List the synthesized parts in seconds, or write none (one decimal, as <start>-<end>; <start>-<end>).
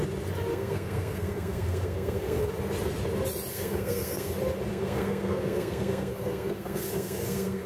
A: 0.5-2.5; 3.5-4.3; 4.7-7.7